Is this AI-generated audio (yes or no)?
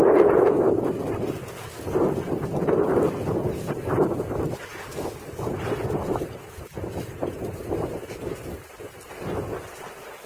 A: no